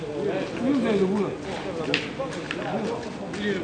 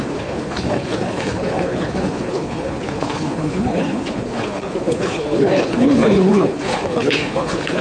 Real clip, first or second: first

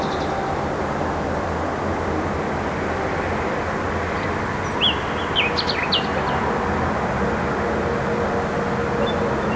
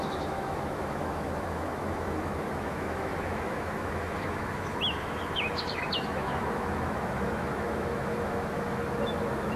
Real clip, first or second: first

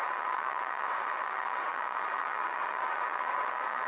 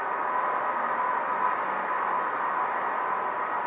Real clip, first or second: second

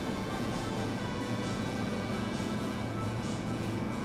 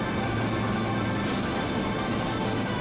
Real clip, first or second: second